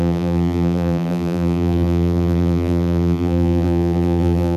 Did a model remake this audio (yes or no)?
yes